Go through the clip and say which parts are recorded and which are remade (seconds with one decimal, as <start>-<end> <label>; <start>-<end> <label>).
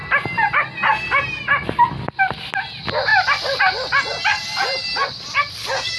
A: 0.0-6.0 recorded